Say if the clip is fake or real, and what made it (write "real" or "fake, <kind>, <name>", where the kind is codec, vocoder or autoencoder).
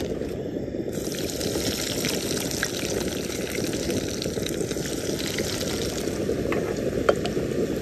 real